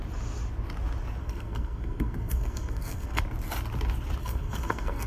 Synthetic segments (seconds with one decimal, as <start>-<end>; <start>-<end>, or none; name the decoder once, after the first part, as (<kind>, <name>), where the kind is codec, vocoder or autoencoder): 1.2-3.2 (codec, SNAC); 4.2-5.1